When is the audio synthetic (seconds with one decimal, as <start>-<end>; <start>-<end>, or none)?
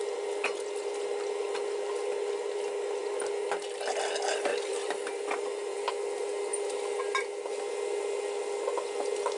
4.5-5.9